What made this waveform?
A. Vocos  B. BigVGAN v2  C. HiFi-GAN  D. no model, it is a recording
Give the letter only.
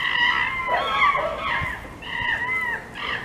D